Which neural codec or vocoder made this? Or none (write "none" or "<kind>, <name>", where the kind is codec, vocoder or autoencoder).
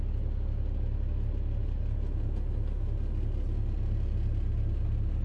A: none